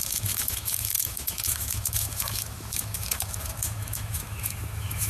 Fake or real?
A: fake